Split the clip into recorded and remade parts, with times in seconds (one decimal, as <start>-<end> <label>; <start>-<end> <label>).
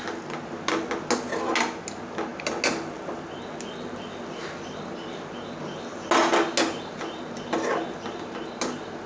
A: 0.0-9.1 recorded